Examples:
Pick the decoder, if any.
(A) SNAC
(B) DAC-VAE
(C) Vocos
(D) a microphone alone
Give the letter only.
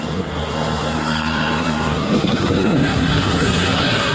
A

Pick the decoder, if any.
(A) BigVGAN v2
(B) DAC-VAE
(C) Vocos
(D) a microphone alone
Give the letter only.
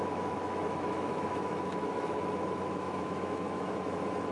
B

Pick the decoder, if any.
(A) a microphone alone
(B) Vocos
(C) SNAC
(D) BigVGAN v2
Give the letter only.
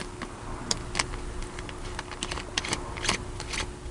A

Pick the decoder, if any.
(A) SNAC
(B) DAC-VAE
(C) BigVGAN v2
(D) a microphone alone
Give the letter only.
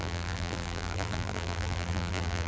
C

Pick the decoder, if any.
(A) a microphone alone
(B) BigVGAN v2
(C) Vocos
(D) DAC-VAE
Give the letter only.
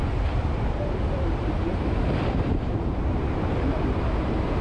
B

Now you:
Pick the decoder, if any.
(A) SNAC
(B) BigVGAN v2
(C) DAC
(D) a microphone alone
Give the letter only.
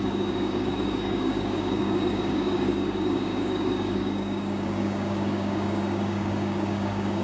C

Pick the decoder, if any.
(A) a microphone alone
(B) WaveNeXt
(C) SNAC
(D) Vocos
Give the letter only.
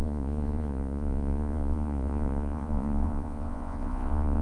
D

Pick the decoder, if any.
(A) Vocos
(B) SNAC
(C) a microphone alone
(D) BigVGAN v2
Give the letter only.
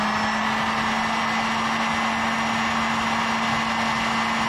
C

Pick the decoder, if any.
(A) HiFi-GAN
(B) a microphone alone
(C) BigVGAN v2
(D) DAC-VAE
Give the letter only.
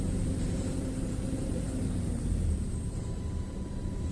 C